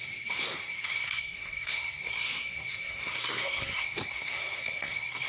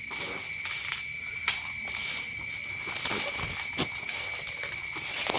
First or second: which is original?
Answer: second